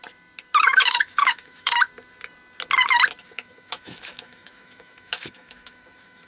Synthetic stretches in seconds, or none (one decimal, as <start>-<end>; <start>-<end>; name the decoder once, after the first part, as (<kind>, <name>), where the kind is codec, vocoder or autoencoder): 0.6-1.9 (autoencoder, DAC-VAE); 3.2-6.3

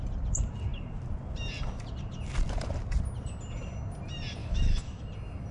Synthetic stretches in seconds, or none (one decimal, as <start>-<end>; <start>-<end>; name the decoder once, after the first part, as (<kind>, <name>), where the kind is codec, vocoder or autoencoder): 4.4-5.0 (autoencoder, DAC-VAE)